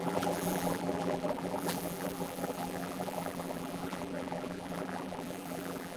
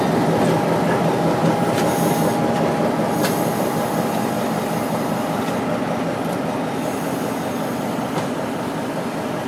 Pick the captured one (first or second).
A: second